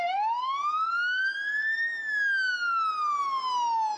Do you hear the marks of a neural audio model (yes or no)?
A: no